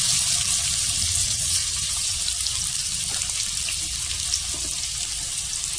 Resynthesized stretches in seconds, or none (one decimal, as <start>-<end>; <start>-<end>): 1.2-2.2